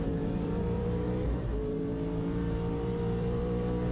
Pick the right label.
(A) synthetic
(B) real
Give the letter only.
A